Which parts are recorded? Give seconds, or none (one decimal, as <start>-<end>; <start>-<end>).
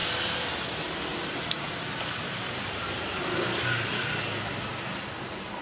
0.0-1.1; 4.2-4.7